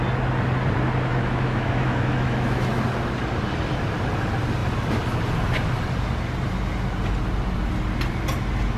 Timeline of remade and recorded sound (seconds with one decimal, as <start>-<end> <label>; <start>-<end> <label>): 0.0-1.1 recorded; 1.1-2.8 remade; 2.8-8.8 recorded